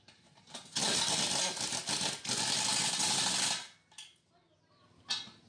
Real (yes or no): yes